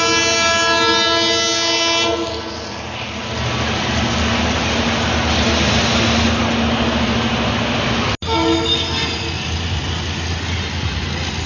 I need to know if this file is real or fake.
real